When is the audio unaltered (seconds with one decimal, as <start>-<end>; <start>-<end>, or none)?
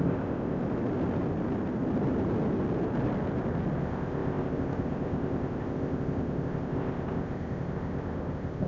0.6-3.8